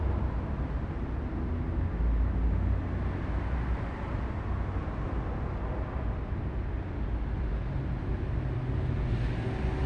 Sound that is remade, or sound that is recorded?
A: recorded